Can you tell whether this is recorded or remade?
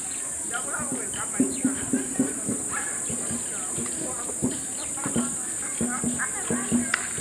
recorded